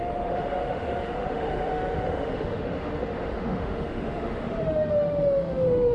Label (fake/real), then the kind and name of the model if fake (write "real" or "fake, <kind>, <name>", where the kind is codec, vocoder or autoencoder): fake, autoencoder, DAC-VAE